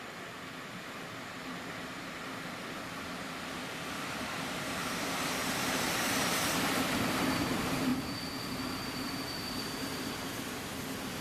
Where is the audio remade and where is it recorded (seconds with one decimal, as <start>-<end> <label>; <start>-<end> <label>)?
0.0-5.4 recorded; 5.4-7.2 remade; 7.2-7.9 recorded; 7.9-10.1 remade; 10.1-11.2 recorded